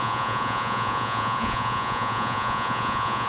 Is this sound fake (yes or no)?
yes